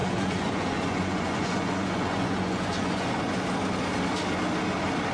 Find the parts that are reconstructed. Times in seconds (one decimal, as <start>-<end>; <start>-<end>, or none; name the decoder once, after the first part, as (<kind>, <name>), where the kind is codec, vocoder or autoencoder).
0.0-3.1 (vocoder, Vocos)